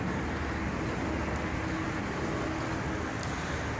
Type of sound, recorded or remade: recorded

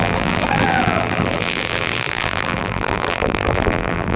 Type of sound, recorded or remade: remade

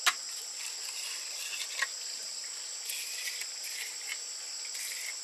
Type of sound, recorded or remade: recorded